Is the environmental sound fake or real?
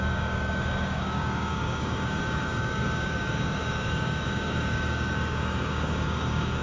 fake